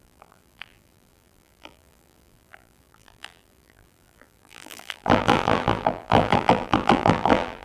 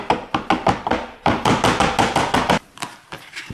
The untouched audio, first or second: second